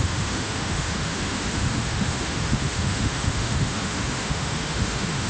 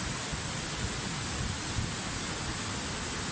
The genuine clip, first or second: second